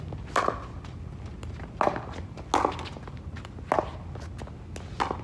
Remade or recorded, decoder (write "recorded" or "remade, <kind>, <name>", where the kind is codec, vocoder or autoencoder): recorded